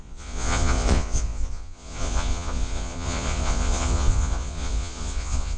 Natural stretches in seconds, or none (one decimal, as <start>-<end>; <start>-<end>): none